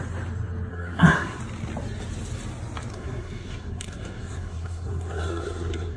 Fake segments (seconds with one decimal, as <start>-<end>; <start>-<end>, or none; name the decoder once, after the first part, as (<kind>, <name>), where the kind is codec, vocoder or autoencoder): 0.7-1.4 (codec, SNAC); 2.9-6.0